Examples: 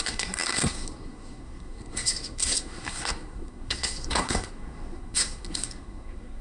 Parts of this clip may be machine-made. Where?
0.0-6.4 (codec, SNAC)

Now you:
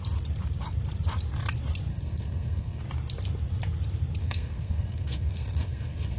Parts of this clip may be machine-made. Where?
1.9-2.8 (codec, SNAC); 4.2-6.2

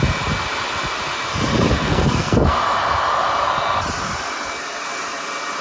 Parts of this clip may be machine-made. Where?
1.7-2.6 (codec, SNAC)

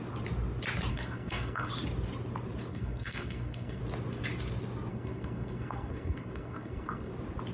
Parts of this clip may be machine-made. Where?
0.9-1.7 (codec, SNAC); 2.7-3.8; 4.9-7.1

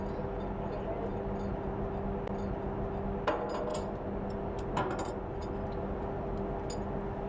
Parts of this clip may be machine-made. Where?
none

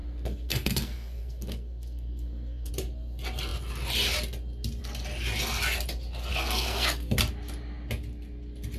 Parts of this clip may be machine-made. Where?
0.0-2.7 (codec, SNAC); 6.3-7.2

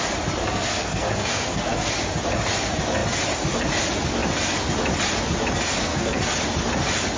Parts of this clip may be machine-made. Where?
0.4-1.9 (codec, SNAC); 5.8-6.3